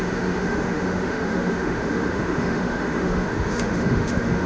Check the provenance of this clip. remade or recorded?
remade